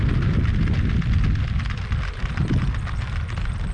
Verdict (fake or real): real